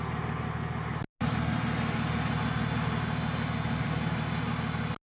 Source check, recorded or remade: recorded